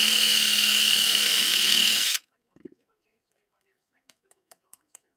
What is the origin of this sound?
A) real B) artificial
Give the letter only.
B